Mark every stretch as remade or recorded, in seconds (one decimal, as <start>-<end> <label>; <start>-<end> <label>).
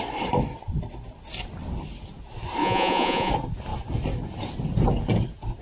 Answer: 0.0-2.6 recorded; 2.6-3.3 remade; 3.3-5.6 recorded